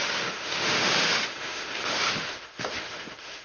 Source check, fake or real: fake